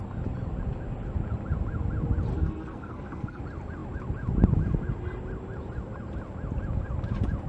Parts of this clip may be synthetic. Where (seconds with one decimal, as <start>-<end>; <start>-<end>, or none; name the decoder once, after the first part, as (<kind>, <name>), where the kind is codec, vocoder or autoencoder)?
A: 2.3-3.4 (codec, SNAC)